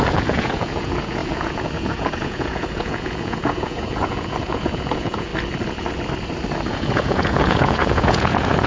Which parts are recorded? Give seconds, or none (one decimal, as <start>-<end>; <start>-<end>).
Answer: 5.3-6.7